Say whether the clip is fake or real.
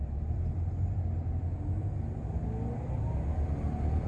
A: real